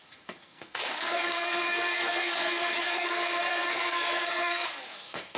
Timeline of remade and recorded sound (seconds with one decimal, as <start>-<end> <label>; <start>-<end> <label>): 0.0-5.4 remade